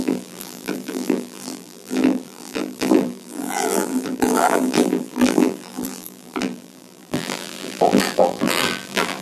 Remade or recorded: remade